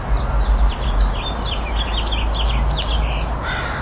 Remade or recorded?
recorded